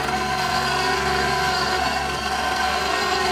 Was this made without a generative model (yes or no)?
no